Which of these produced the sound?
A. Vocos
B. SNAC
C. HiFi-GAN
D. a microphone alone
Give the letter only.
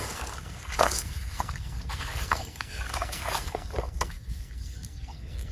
B